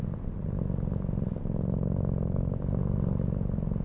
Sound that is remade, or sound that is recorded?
recorded